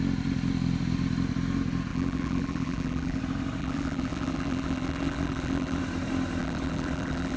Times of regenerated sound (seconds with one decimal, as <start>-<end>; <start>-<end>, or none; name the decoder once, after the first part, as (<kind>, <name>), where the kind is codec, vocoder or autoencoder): 1.9-3.2 (vocoder, BigVGAN v2); 3.6-5.8; 6.4-7.4